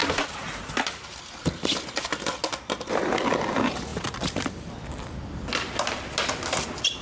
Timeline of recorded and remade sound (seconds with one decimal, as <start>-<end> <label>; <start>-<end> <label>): 0.0-7.0 recorded